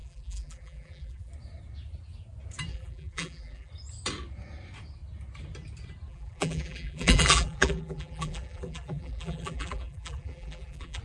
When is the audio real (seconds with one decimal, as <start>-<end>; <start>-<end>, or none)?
1.3-2.7; 3.7-6.1